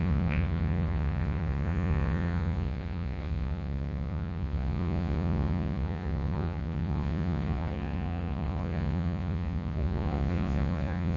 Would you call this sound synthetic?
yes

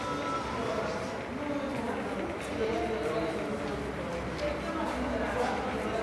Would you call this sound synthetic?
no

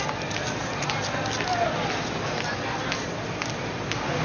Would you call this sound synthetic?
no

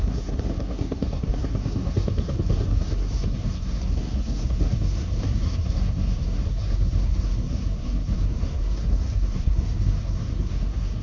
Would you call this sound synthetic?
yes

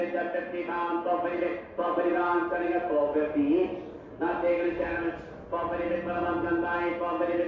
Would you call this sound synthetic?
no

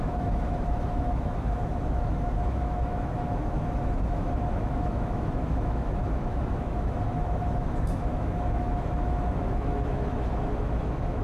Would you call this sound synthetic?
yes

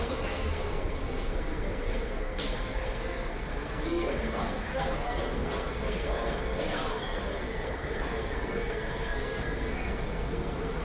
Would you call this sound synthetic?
yes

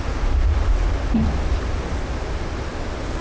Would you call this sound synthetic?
no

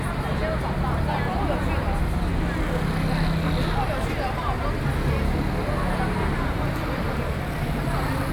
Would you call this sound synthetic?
no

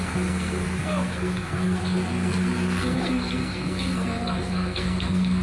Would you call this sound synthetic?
yes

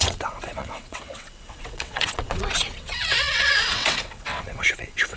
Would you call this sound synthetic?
yes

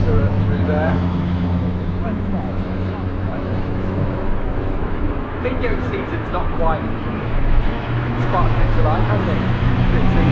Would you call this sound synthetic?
yes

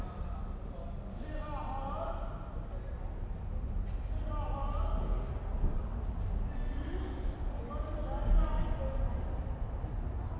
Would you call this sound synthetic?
no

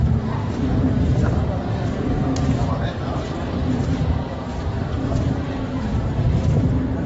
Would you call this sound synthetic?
yes